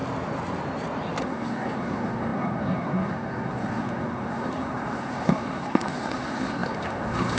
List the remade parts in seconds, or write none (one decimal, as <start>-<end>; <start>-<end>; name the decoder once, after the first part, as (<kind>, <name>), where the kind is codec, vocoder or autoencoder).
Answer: 1.2-7.4 (codec, SNAC)